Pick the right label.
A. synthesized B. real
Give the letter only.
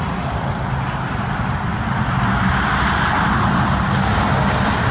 B